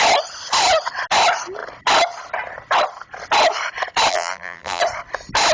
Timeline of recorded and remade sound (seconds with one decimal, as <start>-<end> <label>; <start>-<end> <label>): 0.0-4.1 recorded; 4.1-4.8 remade; 4.8-5.5 recorded